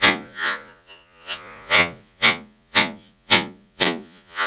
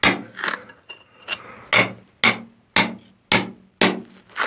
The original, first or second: second